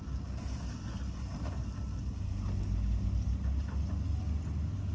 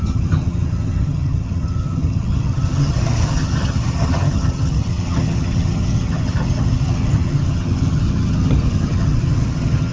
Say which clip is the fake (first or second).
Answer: second